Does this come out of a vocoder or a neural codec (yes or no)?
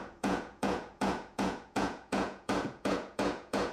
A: yes